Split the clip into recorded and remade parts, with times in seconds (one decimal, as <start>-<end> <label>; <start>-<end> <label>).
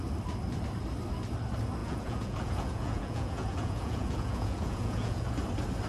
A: 0.0-1.8 recorded; 1.8-5.3 remade; 5.3-5.9 recorded